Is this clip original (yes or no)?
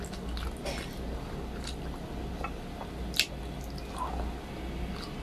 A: yes